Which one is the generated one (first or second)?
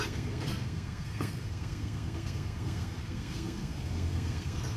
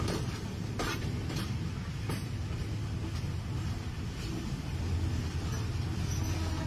first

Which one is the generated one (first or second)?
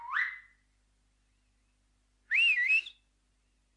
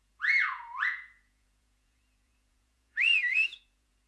second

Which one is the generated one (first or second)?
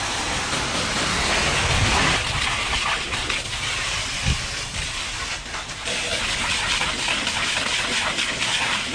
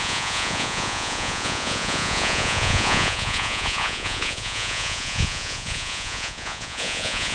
second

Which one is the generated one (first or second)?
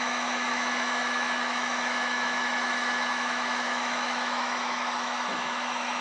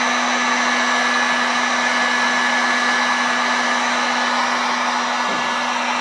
first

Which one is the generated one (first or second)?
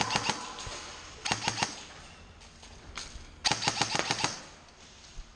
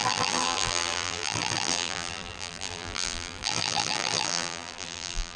second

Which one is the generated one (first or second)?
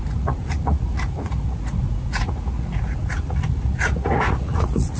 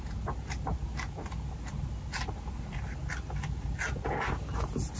first